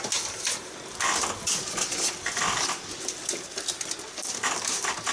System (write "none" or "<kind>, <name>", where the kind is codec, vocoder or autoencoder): none